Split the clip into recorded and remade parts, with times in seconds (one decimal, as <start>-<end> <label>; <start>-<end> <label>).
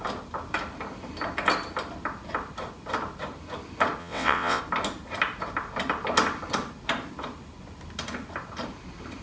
0.0-4.0 recorded; 4.0-4.6 remade; 4.6-9.2 recorded